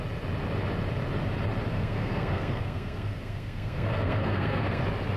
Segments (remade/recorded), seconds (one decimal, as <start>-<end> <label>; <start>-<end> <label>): 0.0-1.7 recorded; 1.7-4.8 remade; 4.8-5.2 recorded